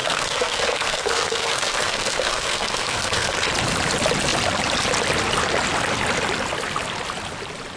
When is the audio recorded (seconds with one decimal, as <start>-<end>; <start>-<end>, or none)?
3.5-7.8